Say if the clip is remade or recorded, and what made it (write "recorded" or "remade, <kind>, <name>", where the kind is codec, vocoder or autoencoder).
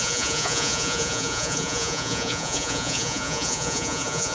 remade, vocoder, Vocos